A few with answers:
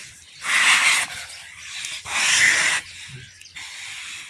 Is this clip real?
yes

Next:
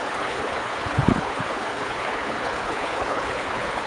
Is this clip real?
no